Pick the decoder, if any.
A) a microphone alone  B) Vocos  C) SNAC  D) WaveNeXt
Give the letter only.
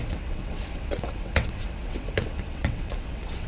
D